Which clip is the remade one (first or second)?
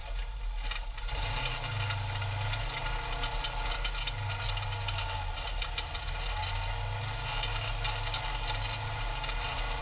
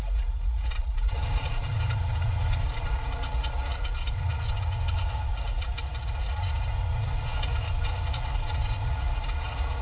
second